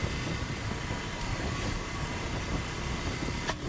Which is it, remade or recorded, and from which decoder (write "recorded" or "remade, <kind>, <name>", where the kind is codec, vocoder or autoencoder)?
recorded